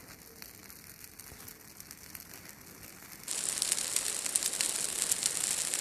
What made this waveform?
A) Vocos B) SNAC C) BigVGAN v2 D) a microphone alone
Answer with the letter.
D